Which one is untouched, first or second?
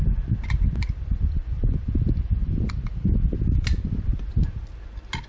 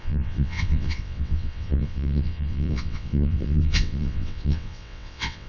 first